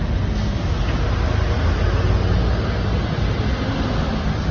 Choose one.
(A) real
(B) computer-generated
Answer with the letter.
A